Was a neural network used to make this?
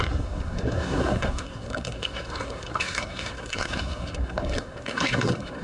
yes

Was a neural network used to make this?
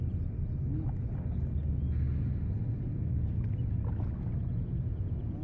no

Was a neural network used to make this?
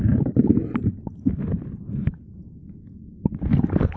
no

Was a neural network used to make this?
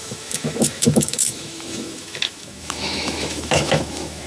yes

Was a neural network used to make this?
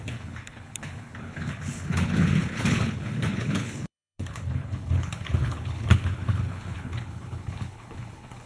yes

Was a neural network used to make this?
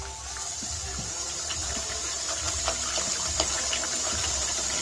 no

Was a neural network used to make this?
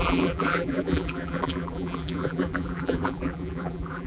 yes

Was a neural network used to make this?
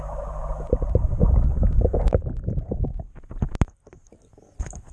no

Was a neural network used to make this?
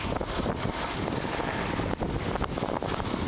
no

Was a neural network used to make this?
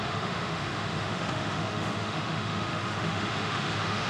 yes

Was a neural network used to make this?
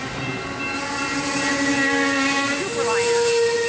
no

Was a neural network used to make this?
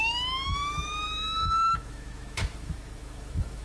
yes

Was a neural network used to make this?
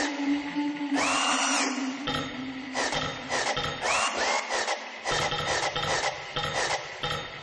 no